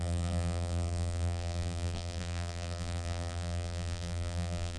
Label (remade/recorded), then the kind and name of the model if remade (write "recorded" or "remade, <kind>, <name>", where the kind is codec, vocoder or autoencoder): remade, vocoder, BigVGAN v2